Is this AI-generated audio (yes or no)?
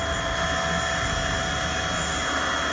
no